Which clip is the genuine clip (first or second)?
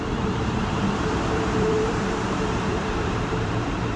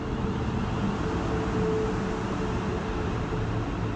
second